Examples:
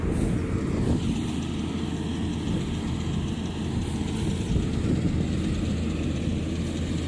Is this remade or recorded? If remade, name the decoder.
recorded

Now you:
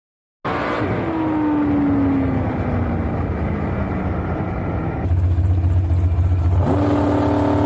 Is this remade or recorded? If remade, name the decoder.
recorded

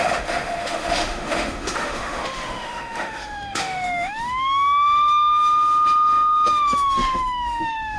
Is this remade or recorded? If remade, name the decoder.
remade, autoencoder, DAC-VAE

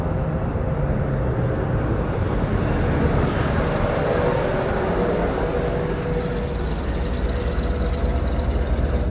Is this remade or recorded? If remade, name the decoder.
recorded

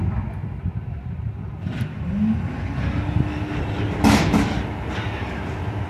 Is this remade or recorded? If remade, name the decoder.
recorded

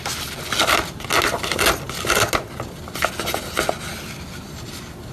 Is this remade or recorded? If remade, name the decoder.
recorded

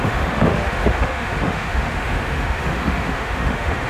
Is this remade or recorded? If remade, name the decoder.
remade, autoencoder, DAC-VAE